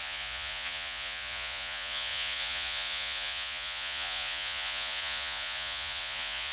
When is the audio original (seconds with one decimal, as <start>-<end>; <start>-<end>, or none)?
none